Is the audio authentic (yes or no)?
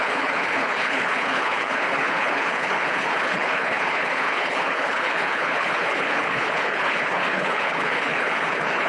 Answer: no